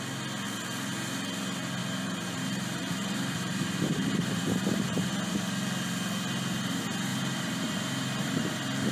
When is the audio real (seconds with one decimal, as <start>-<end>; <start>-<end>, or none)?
0.0-1.8; 5.1-7.1; 8.4-8.9